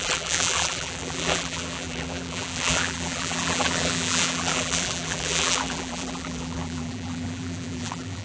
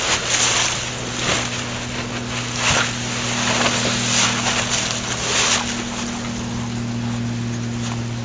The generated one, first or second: first